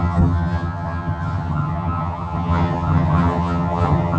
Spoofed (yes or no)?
yes